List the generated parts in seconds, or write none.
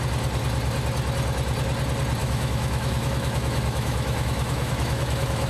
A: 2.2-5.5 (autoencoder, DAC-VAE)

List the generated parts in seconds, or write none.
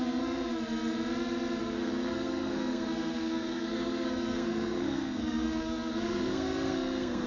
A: 0.0-0.5 (codec, SNAC); 1.6-7.3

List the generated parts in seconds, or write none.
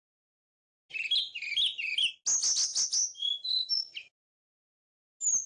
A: none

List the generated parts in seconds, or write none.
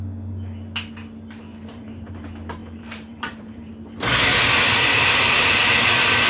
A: 1.5-2.1 (vocoder, BigVGAN v2); 2.6-3.7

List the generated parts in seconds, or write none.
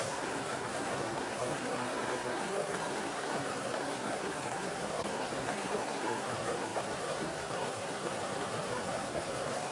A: 0.0-9.7 (codec, SNAC)